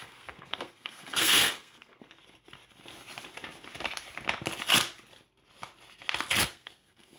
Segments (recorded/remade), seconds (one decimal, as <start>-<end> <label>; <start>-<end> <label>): 0.0-2.2 remade; 2.2-6.4 recorded; 6.4-7.2 remade